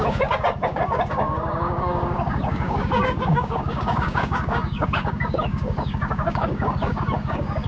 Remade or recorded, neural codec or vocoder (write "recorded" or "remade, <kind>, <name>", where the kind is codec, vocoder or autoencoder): remade, codec, DAC